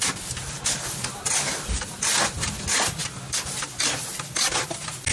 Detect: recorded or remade recorded